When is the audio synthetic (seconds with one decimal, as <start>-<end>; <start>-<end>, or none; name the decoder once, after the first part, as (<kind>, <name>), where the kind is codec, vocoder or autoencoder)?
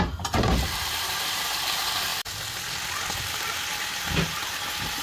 0.0-2.1 (vocoder, BigVGAN v2); 3.2-5.0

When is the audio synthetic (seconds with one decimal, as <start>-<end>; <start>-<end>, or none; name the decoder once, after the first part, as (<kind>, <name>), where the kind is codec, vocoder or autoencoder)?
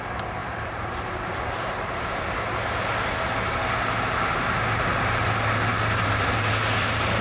0.4-2.2 (vocoder, BigVGAN v2); 5.7-6.5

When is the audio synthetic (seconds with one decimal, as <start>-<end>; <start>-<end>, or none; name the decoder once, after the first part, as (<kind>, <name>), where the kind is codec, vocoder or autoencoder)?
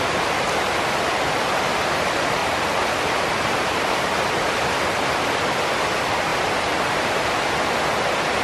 6.3-7.5 (vocoder, BigVGAN v2)